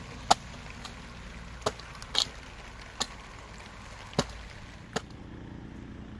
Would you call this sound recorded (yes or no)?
yes